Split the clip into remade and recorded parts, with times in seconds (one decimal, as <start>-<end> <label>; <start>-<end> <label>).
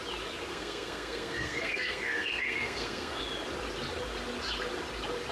0.0-0.5 recorded; 0.5-3.2 remade; 3.2-5.3 recorded